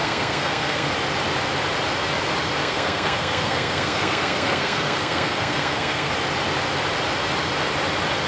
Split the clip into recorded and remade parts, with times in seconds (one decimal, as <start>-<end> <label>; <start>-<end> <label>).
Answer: 0.0-0.9 remade; 0.9-2.6 recorded; 2.6-6.1 remade; 6.1-8.3 recorded